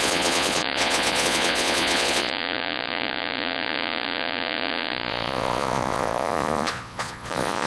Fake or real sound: fake